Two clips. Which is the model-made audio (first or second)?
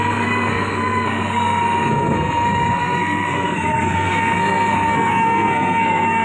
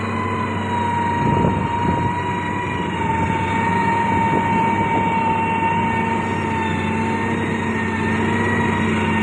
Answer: first